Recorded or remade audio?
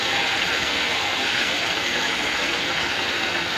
remade